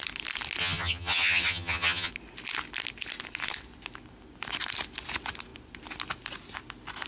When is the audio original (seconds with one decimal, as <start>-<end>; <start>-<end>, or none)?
0.0-0.6; 2.1-7.1